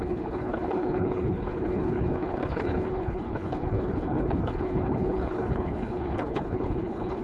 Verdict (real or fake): fake